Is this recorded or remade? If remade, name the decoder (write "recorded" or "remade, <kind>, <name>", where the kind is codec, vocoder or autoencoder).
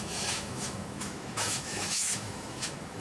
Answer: remade, autoencoder, DAC-VAE